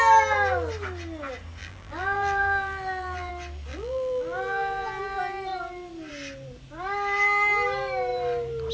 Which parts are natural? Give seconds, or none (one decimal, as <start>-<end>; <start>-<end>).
0.0-1.6; 3.3-3.7; 5.0-8.7